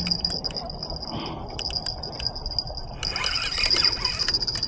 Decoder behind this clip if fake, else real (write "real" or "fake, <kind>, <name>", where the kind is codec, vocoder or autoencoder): real